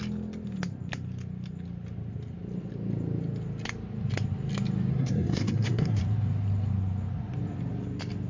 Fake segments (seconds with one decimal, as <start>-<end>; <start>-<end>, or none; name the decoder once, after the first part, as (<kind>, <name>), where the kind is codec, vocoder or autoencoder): 4.9-6.0 (codec, SNAC)